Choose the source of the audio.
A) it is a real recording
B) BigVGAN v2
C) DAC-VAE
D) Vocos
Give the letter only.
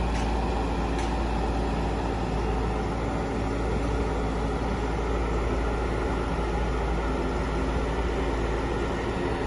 A